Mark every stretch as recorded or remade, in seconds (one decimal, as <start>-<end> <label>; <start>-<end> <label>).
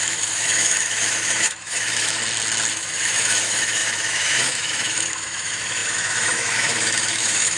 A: 0.0-2.2 remade; 2.2-2.7 recorded; 2.7-7.6 remade